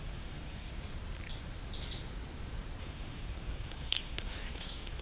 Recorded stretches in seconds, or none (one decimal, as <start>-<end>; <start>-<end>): 0.7-2.8